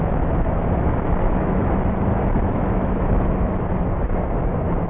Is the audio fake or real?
fake